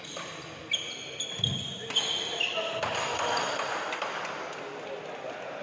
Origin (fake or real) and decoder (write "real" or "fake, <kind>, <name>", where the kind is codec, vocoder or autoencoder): real